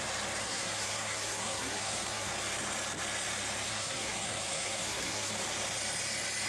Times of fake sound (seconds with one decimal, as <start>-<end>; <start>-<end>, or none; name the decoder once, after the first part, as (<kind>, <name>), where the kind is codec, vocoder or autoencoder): 0.4-2.3 (codec, SNAC); 3.7-5.3